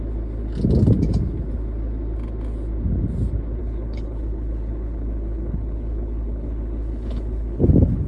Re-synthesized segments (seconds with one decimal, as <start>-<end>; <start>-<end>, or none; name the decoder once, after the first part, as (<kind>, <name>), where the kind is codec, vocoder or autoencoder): 3.6-8.1 (codec, HILCodec)